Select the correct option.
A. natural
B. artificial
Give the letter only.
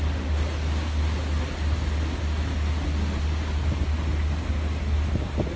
A